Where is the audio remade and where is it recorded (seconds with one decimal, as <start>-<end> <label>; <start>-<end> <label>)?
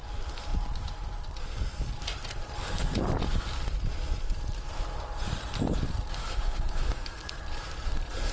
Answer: 0.0-6.2 recorded; 6.2-7.2 remade; 7.2-8.3 recorded